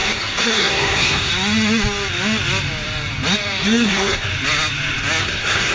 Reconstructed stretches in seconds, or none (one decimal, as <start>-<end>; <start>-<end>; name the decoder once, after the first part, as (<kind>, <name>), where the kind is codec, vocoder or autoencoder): 0.0-1.3 (codec, SNAC); 3.6-4.3; 5.2-5.7